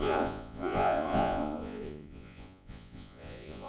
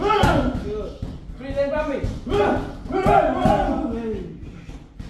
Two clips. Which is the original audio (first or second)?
second